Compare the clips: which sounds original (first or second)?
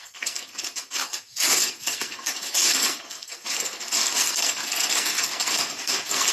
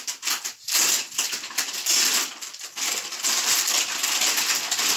second